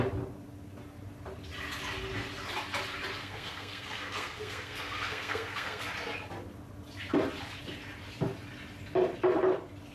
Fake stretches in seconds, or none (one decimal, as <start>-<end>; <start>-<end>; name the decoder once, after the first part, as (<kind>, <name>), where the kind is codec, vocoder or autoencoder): 3.2-5.8 (codec, SNAC)

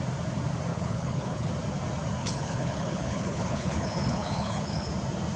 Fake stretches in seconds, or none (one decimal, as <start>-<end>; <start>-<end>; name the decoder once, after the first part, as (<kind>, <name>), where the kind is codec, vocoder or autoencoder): 0.7-1.5 (codec, HILCodec); 2.2-4.9

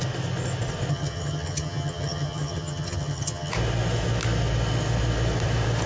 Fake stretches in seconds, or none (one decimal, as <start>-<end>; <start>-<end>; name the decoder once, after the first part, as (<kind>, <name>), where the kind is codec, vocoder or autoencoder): 0.9-3.5 (vocoder, HiFi-GAN)

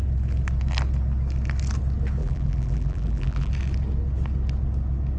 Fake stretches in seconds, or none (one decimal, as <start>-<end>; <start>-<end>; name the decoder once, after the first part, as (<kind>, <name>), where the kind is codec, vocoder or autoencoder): 2.2-3.5 (vocoder, BigVGAN v2)

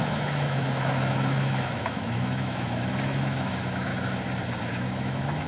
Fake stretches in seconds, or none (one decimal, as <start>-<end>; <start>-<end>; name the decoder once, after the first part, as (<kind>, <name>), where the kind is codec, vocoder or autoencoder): 0.0-3.9 (autoencoder, DAC-VAE); 4.6-5.5